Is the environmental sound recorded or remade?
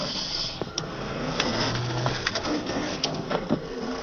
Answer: remade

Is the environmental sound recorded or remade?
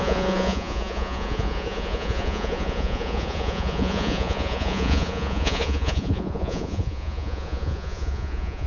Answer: remade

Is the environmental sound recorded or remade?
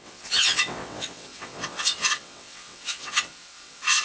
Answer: remade